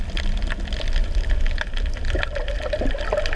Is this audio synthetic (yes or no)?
no